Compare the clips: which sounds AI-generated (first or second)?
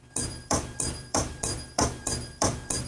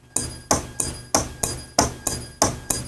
first